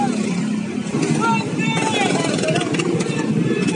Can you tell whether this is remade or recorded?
recorded